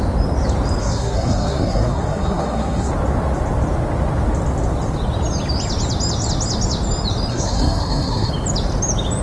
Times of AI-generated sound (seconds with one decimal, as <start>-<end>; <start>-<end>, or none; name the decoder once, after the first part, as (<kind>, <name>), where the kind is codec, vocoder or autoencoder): 0.8-2.9 (codec, SNAC); 7.3-8.3